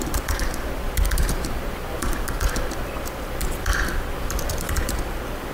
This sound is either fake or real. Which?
fake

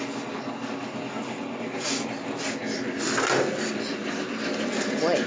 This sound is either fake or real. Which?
real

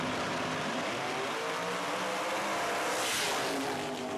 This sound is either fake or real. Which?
real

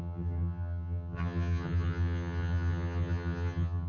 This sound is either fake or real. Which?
fake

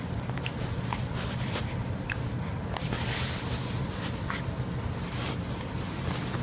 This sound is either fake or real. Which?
real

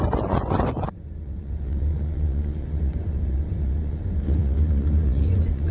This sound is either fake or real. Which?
fake